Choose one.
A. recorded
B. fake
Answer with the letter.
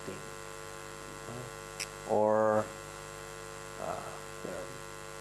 A